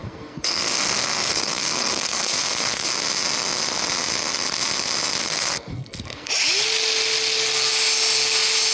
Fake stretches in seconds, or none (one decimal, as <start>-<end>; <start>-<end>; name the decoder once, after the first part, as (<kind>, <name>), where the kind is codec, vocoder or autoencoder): 0.0-2.9 (codec, SNAC); 5.2-6.3